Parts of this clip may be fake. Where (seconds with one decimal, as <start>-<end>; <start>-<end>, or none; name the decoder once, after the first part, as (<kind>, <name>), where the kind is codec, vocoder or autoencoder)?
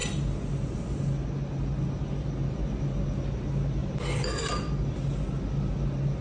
3.8-4.7 (vocoder, BigVGAN v2)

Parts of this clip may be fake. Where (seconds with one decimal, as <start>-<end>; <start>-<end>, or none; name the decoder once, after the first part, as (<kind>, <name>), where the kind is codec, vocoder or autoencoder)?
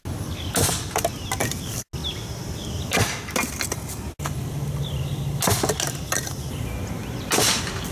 none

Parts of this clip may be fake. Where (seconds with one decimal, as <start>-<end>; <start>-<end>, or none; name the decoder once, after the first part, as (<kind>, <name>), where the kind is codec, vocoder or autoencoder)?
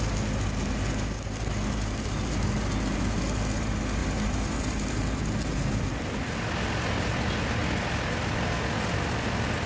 4.0-5.2 (vocoder, BigVGAN v2)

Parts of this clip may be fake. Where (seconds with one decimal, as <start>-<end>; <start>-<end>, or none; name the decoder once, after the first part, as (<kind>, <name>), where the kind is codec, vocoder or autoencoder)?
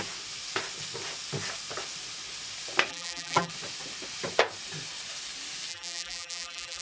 2.9-3.5 (vocoder, BigVGAN v2); 5.7-6.8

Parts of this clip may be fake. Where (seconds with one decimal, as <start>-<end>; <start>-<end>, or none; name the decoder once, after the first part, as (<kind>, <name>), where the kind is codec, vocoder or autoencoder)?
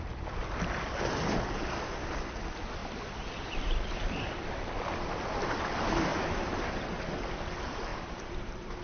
6.1-6.7 (vocoder, BigVGAN v2); 7.9-8.8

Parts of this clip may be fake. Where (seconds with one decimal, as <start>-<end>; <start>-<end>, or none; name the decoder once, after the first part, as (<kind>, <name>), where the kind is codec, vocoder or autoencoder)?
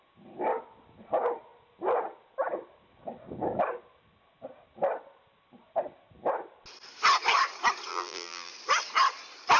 7.9-8.5 (vocoder, BigVGAN v2)